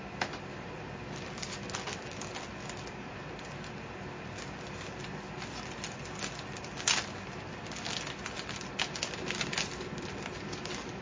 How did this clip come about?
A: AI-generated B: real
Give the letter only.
B